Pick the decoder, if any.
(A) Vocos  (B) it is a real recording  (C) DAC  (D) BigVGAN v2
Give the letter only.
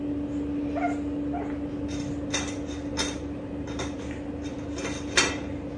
B